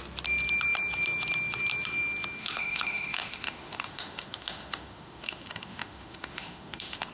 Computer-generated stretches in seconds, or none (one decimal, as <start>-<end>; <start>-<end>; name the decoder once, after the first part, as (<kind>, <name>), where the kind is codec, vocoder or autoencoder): 2.4-7.1 (autoencoder, DAC-VAE)